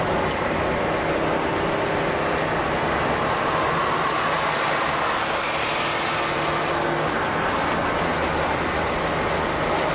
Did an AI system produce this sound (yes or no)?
no